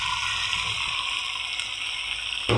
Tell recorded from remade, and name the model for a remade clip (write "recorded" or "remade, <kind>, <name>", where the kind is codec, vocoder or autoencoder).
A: recorded